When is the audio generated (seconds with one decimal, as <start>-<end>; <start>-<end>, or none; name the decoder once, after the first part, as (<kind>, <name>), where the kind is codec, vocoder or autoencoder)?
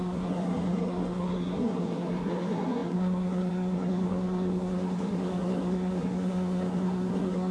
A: 0.0-7.5 (codec, SNAC)